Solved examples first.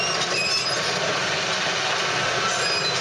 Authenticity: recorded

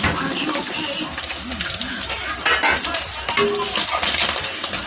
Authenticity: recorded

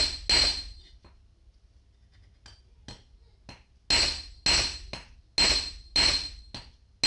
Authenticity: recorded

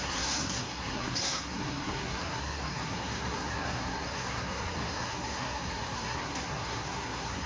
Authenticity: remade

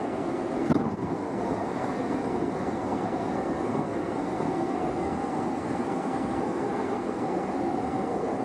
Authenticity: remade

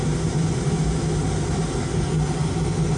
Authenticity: recorded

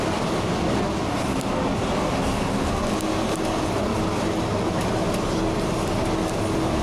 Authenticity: recorded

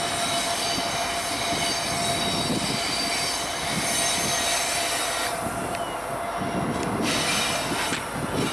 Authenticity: recorded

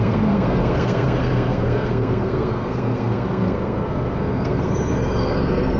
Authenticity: remade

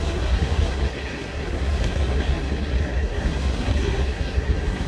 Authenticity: remade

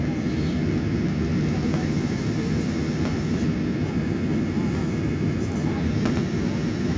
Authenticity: recorded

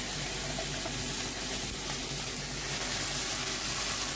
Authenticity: recorded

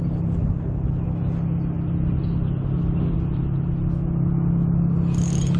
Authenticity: recorded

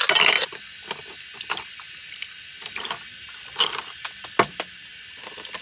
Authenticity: recorded